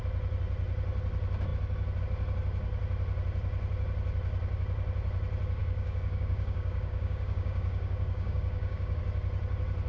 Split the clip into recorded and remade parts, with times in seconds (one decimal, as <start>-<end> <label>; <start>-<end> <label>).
0.0-5.6 recorded; 5.6-9.0 remade; 9.0-9.9 recorded